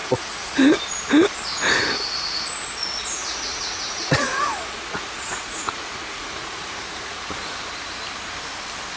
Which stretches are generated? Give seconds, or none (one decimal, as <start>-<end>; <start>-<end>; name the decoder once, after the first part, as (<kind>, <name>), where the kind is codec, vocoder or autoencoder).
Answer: 0.0-0.5 (vocoder, Vocos); 3.1-7.2